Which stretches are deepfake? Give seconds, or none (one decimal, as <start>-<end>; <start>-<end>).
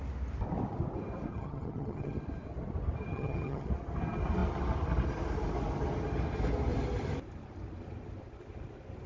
1.3-2.2; 3.1-3.7